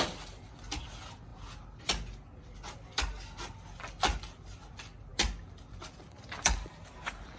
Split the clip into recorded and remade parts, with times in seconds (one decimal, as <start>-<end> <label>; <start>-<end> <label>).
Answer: 0.0-7.4 recorded